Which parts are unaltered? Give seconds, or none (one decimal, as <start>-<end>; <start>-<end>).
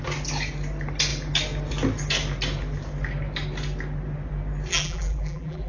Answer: 0.0-4.7